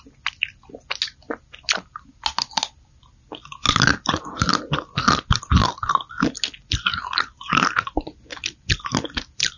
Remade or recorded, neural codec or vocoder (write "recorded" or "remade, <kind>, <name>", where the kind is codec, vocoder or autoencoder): recorded